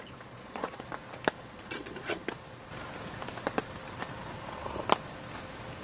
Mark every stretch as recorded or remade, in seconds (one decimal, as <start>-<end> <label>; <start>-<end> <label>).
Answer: 0.0-0.9 remade; 0.9-1.4 recorded; 1.4-2.2 remade; 2.2-5.8 recorded